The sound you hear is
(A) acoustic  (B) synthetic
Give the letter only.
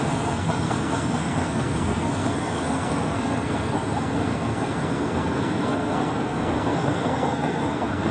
B